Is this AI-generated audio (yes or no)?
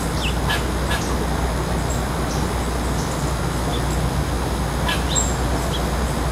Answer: no